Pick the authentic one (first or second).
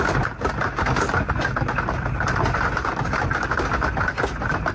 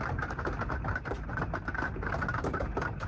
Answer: first